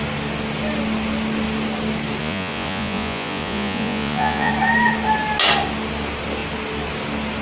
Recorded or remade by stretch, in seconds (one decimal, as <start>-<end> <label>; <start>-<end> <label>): 0.0-2.2 recorded; 2.2-4.5 remade; 4.5-7.4 recorded